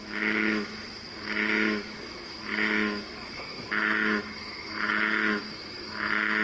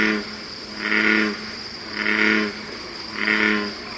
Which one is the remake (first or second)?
first